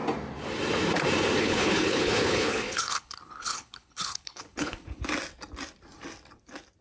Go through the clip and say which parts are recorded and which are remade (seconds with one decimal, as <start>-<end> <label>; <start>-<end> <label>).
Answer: 0.0-1.4 recorded; 1.4-5.0 remade; 5.0-6.8 recorded